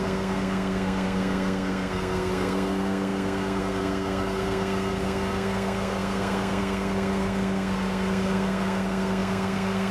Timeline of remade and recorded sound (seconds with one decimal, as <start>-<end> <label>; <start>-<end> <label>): 0.0-9.9 remade